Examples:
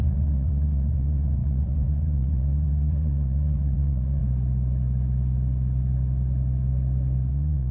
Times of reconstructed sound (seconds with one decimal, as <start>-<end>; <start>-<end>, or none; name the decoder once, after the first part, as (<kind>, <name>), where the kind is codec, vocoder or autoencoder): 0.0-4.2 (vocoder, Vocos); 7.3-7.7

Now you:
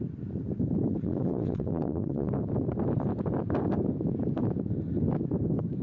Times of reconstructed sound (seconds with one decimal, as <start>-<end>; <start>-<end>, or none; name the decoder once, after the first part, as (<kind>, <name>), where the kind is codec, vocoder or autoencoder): 0.9-2.3 (vocoder, Vocos)

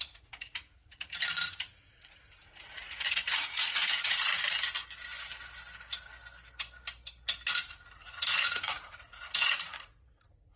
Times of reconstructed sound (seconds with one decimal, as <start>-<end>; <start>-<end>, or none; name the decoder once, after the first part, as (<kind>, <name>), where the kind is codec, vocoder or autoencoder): 0.0-4.3 (vocoder, Vocos); 7.5-10.6

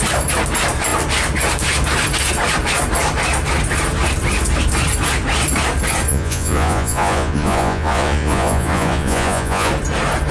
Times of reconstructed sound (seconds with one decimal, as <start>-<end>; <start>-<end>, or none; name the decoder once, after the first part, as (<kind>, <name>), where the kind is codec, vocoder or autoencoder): 6.1-9.7 (vocoder, Vocos)

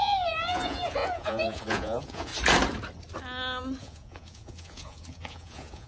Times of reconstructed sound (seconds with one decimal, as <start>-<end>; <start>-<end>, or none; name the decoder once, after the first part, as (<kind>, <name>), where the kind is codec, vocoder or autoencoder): 0.0-2.3 (vocoder, Vocos); 3.8-5.9

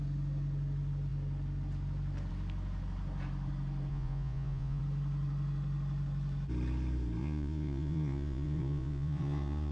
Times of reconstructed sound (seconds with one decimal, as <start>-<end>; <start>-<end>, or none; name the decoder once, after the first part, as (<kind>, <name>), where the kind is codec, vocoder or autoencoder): 3.9-4.8 (vocoder, Vocos); 7.2-9.7